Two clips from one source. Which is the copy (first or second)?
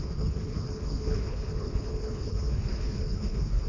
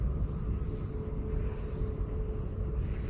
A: first